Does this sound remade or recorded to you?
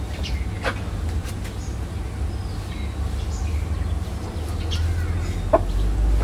recorded